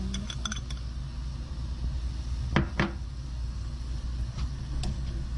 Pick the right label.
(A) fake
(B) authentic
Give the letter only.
B